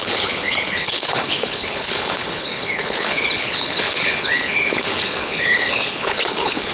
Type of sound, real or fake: fake